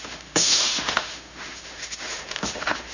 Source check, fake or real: fake